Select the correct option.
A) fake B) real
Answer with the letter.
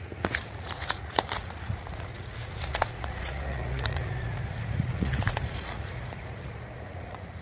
A